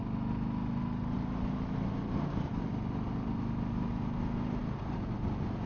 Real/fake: real